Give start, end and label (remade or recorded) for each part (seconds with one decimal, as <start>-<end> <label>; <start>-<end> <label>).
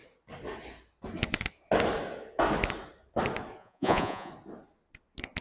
0.0-3.6 recorded; 3.6-4.3 remade; 4.3-5.4 recorded